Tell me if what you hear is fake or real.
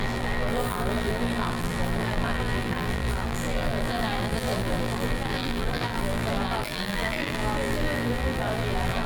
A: fake